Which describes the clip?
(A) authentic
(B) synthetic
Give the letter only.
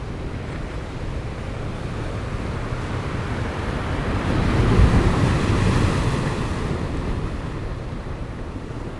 A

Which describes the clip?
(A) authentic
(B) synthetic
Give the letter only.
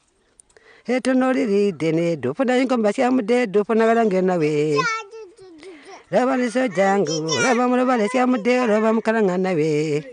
A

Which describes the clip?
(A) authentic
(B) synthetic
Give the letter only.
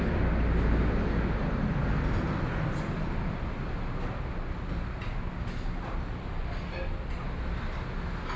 A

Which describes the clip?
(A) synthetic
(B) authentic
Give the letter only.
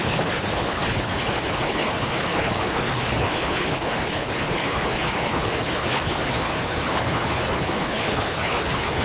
A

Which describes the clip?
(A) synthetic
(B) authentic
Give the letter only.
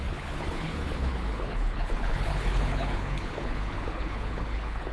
A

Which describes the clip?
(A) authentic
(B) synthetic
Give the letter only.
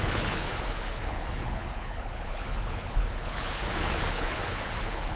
B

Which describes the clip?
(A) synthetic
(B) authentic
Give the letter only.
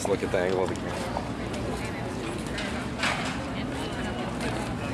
B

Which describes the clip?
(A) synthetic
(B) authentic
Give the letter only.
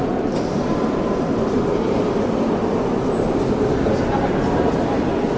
B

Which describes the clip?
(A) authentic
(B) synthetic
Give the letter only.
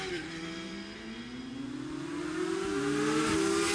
A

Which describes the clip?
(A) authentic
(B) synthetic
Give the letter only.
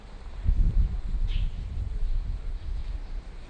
A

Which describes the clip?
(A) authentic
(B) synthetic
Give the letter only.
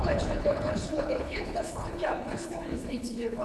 B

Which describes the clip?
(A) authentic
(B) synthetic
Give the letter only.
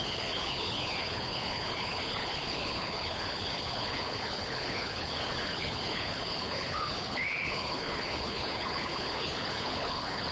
B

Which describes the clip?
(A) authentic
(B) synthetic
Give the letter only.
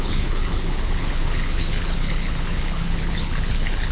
B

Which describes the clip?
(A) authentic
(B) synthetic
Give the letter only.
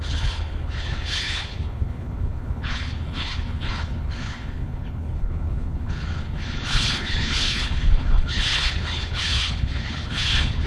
B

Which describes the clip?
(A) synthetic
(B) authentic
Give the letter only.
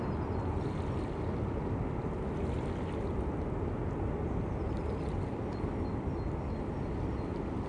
B